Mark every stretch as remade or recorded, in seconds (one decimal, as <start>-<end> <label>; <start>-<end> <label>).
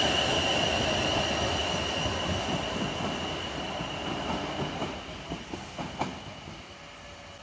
0.0-7.4 recorded